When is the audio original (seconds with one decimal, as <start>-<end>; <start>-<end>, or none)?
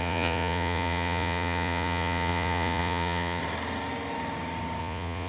3.4-4.8